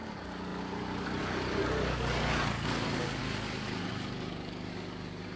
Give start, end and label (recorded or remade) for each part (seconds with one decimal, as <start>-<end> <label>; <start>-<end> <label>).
0.0-3.2 remade; 3.2-3.9 recorded; 3.9-5.4 remade